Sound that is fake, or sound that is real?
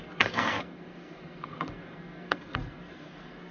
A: fake